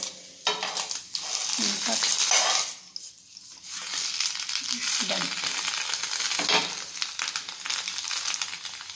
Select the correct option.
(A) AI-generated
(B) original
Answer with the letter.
B